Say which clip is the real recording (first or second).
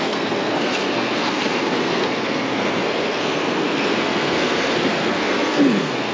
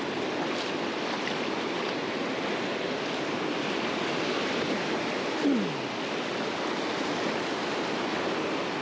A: second